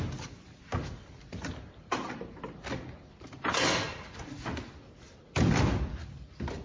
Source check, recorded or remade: recorded